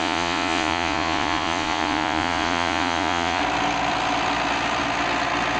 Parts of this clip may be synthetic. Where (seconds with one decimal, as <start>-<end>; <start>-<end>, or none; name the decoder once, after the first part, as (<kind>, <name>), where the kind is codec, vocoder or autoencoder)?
0.0-3.4 (vocoder, Vocos)